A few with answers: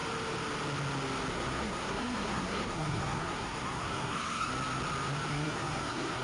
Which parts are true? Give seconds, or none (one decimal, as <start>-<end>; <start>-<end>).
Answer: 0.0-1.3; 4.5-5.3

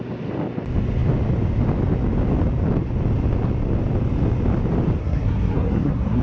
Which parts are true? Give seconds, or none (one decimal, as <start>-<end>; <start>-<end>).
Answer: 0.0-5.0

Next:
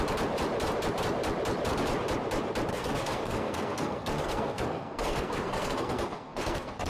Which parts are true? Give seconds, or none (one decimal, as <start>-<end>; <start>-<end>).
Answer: 0.0-2.7

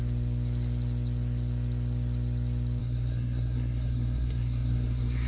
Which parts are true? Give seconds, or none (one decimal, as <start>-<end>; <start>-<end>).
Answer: 0.0-2.8